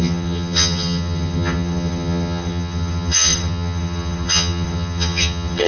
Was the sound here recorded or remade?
remade